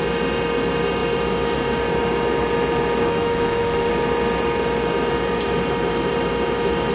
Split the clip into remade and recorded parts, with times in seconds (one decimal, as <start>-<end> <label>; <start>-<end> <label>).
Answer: 0.0-3.0 recorded; 3.0-3.9 remade; 3.9-6.9 recorded